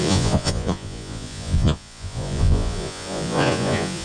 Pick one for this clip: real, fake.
fake